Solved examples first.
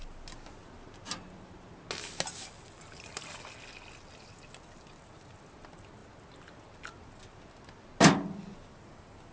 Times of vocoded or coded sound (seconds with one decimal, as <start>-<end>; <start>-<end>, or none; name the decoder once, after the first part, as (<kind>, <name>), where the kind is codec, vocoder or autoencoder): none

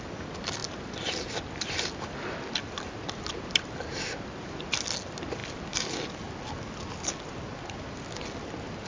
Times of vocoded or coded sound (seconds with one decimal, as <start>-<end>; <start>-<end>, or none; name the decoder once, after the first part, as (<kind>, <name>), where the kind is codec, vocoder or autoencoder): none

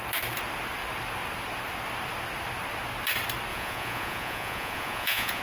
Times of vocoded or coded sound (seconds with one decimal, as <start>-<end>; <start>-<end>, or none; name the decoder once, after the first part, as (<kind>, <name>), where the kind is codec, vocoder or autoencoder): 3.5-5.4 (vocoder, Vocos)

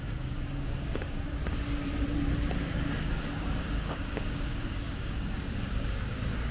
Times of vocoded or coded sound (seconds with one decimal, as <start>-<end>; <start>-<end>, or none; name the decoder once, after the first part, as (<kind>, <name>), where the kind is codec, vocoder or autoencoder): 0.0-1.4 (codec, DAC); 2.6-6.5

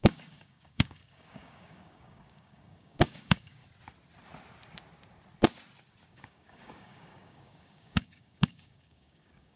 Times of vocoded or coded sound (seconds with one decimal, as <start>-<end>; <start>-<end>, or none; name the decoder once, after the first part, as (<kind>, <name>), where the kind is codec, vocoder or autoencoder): 0.0-3.6 (codec, DAC); 6.1-9.6

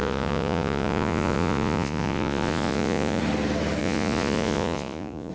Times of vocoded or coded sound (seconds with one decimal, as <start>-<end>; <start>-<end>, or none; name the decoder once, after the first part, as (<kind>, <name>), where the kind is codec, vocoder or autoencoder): 0.0-3.2 (vocoder, Vocos); 3.8-5.3

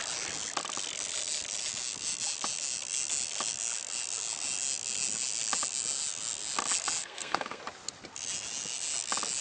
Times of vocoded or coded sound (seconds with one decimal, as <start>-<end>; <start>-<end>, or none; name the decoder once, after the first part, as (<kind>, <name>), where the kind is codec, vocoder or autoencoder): 7.0-7.6 (codec, SNAC)